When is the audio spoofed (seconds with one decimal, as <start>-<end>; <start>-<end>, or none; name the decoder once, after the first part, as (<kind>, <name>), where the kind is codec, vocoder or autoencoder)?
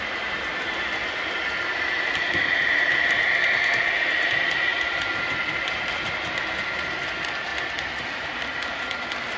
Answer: none